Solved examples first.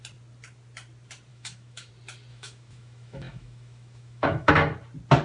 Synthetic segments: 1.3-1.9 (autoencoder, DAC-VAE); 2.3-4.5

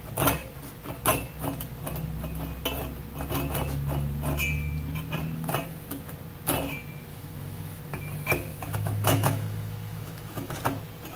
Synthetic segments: 7.1-7.8 (autoencoder, DAC-VAE); 8.5-10.6